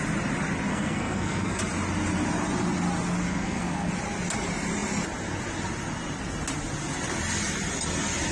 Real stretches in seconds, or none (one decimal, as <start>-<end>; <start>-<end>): 0.0-0.7; 1.6-3.3; 3.9-8.3